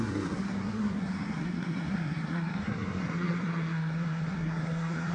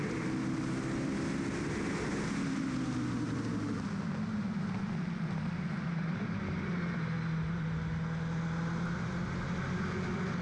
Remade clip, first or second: first